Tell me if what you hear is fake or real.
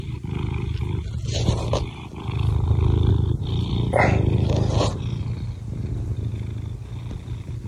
real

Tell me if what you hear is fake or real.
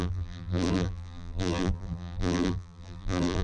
fake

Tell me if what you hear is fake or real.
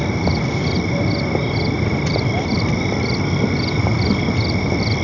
real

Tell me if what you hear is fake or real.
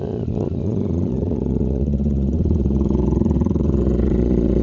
fake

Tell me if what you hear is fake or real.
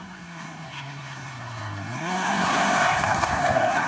fake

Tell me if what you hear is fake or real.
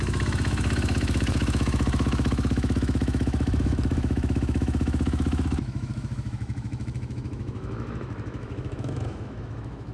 fake